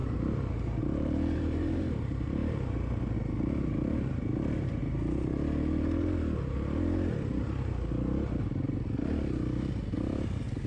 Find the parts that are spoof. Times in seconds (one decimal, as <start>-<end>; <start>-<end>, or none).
0.8-2.4; 4.1-4.8; 9.9-10.7

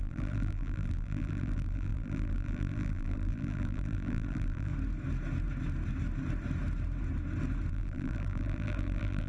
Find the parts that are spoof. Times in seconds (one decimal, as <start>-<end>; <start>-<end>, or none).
0.0-4.7; 7.7-9.3

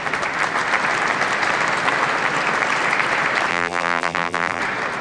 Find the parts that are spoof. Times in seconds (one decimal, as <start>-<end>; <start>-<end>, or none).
3.5-4.6

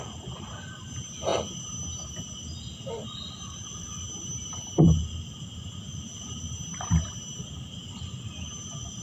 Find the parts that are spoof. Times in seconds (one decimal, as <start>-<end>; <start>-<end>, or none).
none